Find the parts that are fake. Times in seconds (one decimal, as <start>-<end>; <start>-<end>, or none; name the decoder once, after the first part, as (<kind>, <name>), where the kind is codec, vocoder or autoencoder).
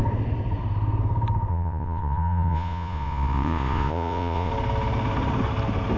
1.5-4.5 (vocoder, Vocos)